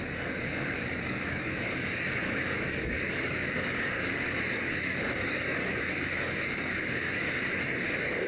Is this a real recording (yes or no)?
no